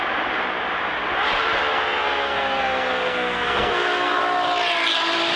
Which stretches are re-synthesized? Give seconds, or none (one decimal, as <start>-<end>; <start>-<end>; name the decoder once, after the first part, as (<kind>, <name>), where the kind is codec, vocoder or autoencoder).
1.7-4.2 (codec, SNAC)

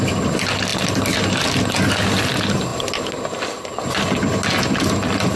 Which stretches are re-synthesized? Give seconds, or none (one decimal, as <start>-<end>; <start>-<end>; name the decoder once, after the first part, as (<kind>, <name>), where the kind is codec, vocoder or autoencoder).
none

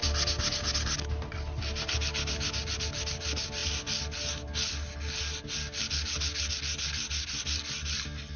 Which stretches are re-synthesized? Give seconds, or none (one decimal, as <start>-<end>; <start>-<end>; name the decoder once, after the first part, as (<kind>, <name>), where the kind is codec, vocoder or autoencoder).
none

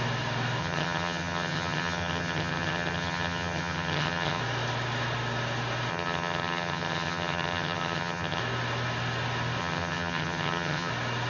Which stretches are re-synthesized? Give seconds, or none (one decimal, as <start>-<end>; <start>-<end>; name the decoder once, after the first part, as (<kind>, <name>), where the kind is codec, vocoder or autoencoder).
0.6-4.4 (vocoder, HiFi-GAN); 5.9-8.4; 9.6-10.9

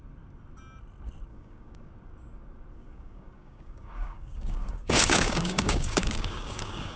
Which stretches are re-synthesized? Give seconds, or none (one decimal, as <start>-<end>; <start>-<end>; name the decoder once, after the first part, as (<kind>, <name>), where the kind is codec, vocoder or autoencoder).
1.3-1.9 (codec, DAC); 2.7-7.0

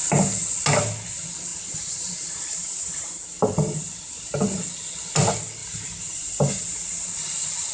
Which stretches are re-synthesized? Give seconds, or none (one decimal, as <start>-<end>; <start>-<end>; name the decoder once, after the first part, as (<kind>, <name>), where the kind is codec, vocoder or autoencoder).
1.5-3.4 (vocoder, BigVGAN v2); 5.6-6.5

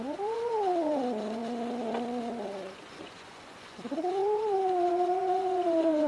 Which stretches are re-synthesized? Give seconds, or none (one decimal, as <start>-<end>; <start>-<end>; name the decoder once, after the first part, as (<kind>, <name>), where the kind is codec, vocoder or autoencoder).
0.0-1.4 (vocoder, Vocos); 2.2-6.1

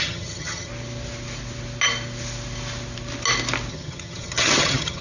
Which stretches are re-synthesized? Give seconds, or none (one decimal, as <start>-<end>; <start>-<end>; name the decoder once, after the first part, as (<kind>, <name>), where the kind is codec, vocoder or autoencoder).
0.0-0.7 (vocoder, HiFi-GAN); 3.7-5.0